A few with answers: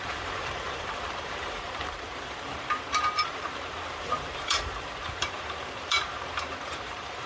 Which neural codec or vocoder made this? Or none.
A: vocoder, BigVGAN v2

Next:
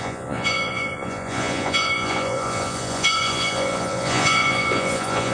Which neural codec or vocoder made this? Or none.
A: vocoder, Vocos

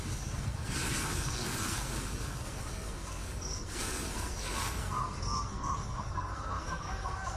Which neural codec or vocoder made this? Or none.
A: codec, SNAC